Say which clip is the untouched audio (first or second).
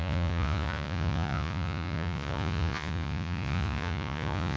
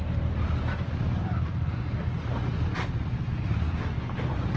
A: second